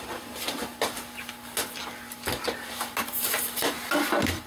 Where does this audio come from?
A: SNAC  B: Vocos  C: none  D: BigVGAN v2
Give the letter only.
C